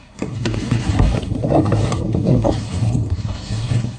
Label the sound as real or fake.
fake